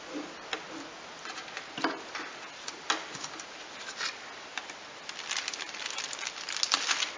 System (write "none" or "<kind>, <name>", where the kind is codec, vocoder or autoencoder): none